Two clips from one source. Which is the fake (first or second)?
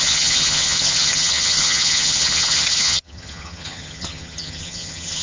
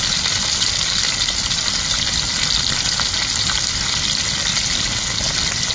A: first